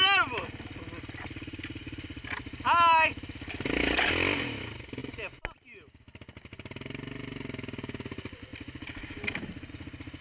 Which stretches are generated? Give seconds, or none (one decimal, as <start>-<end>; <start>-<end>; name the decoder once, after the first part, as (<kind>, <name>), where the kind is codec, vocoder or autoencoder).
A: none